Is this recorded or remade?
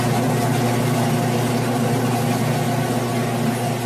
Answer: recorded